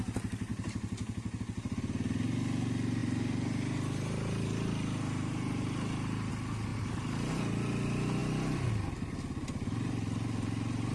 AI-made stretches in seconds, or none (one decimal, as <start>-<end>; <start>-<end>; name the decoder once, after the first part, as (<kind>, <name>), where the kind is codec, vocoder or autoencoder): 0.5-1.4 (vocoder, BigVGAN v2); 3.0-6.3; 6.7-7.3